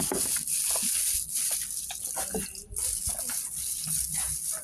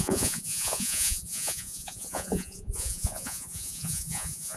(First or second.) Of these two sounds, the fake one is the second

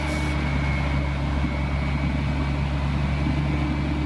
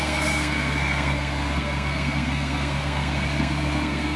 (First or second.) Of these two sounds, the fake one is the second